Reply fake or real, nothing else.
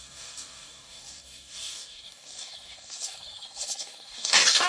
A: fake